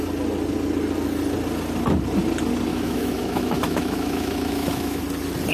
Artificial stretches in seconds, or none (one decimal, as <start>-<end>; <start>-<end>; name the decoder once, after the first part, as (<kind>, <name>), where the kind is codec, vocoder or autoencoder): 2.7-5.0 (autoencoder, DAC-VAE)